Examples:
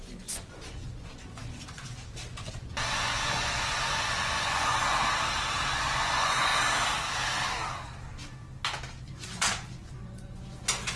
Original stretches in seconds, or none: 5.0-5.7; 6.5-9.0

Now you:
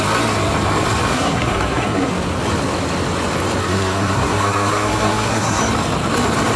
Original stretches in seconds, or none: 0.0-1.1; 2.1-3.6; 5.6-6.6

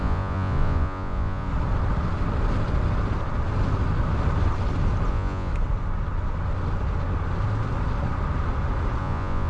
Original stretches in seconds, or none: 1.5-5.1; 5.5-9.0

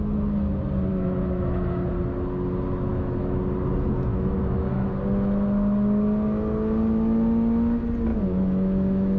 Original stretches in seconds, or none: 0.0-0.9; 1.9-2.9; 3.4-4.1; 4.9-8.1

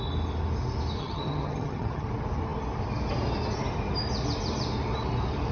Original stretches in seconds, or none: 0.0-1.0; 2.1-5.5